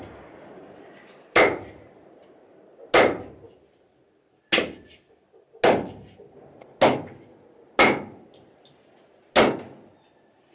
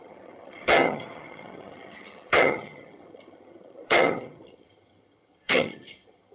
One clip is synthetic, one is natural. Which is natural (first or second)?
first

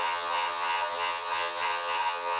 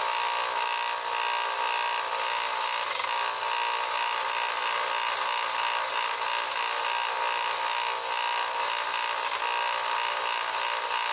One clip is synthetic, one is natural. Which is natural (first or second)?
second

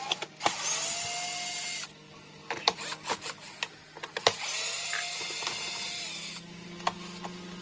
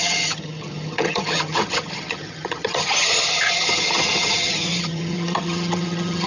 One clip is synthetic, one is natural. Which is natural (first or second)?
first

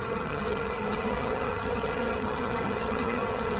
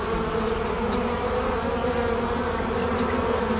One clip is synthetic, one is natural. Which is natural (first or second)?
second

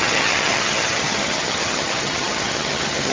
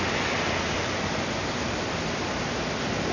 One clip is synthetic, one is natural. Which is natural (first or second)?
second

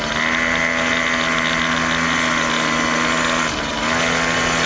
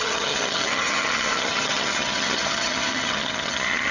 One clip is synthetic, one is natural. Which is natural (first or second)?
first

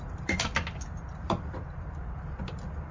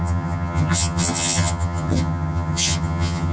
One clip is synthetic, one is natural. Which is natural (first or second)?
first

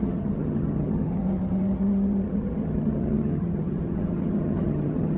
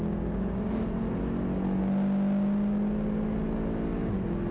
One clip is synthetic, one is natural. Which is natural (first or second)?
second